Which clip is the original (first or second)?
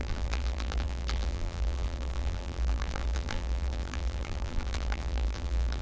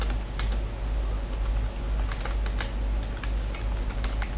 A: second